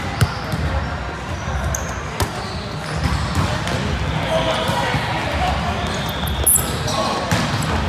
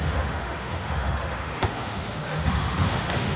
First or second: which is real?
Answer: first